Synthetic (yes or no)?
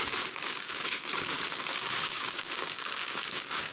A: yes